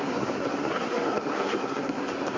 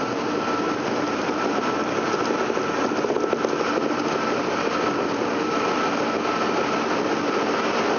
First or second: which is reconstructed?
first